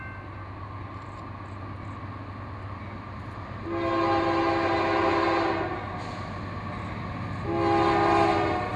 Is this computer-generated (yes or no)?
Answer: no